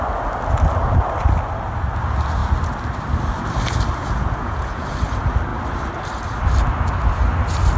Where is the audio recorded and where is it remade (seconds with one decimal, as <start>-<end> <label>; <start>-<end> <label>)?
0.0-4.0 recorded; 4.0-4.9 remade; 4.9-7.8 recorded